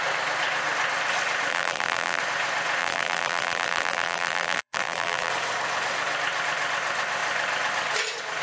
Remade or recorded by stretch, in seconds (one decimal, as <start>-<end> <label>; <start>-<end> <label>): 0.0-1.5 recorded; 1.5-2.2 remade; 2.2-2.8 recorded; 2.8-5.3 remade; 5.3-8.4 recorded